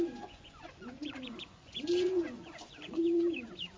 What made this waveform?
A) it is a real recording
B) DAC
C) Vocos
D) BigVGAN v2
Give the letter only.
C